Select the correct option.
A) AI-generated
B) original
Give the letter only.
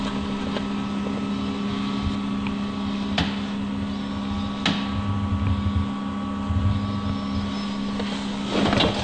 B